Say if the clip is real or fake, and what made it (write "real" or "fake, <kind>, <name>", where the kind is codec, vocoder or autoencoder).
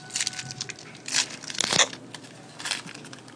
real